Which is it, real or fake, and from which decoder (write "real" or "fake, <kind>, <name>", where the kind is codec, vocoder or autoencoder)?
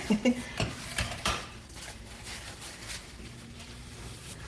fake, vocoder, BigVGAN v2